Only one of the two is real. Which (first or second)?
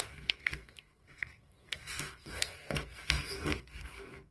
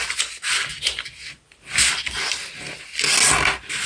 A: second